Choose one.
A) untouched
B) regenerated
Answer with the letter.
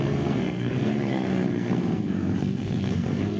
B